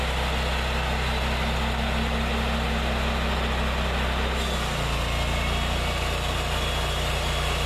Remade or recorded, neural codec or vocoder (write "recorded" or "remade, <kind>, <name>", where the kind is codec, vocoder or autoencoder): recorded